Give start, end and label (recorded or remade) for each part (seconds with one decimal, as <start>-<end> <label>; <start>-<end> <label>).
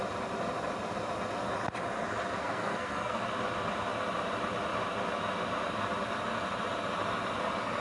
0.0-2.4 recorded; 2.4-3.2 remade; 3.2-7.8 recorded